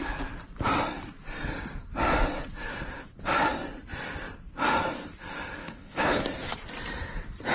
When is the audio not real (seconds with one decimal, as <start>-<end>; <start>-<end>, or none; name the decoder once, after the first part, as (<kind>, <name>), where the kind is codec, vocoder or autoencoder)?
5.6-6.2 (codec, HILCodec)